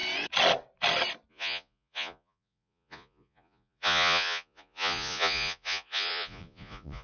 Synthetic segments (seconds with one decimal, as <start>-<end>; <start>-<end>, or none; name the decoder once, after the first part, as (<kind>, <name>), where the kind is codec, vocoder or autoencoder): 1.3-7.0 (vocoder, Vocos)